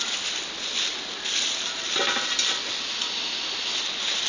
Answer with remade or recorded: recorded